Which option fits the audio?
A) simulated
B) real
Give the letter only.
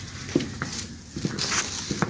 B